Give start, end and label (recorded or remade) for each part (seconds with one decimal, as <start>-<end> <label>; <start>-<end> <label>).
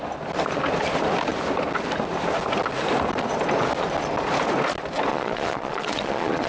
0.0-5.1 recorded; 5.1-6.5 remade